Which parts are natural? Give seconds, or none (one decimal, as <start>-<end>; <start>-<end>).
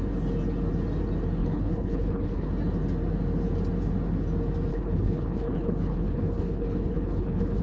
0.0-1.4; 2.5-4.7